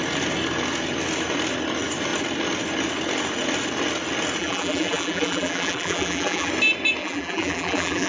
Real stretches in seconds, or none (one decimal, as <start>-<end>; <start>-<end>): 0.0-4.4; 6.5-7.0